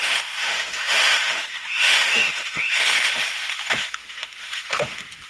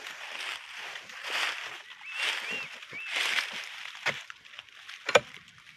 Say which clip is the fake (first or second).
first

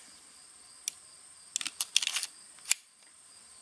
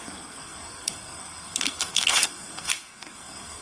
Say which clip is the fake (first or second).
second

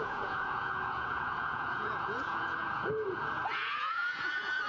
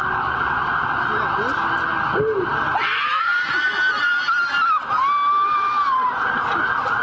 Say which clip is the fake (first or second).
first